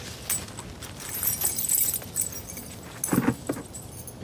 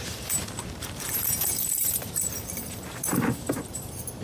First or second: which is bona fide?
first